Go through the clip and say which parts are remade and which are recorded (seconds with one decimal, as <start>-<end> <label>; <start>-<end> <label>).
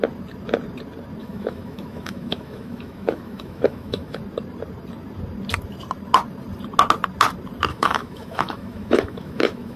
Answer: 0.0-1.2 recorded; 1.2-4.2 remade; 4.2-7.7 recorded; 7.7-9.8 remade